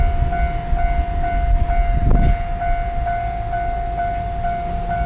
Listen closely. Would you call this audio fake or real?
real